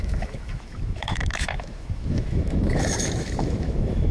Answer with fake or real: fake